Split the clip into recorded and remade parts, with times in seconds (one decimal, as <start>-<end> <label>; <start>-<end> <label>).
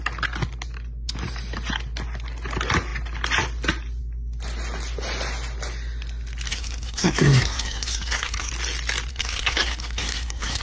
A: 0.0-6.5 recorded; 6.5-8.5 remade; 8.5-9.1 recorded; 9.1-10.6 remade